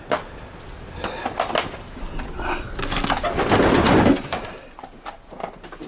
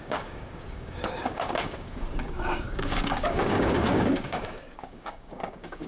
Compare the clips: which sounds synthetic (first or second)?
second